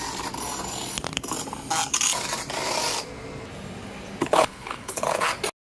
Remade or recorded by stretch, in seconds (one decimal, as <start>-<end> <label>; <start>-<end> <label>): 0.0-4.2 recorded; 4.2-5.3 remade; 5.3-5.8 recorded